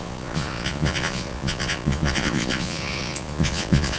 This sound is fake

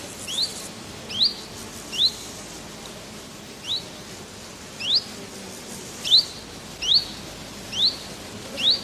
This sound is real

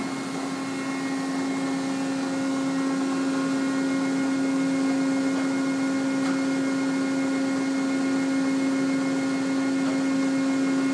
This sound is real